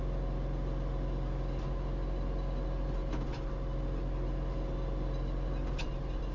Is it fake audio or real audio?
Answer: real